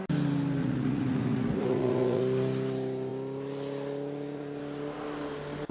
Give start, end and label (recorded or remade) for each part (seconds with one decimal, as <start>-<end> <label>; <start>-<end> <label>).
0.0-0.6 recorded; 0.6-2.2 remade; 2.2-5.7 recorded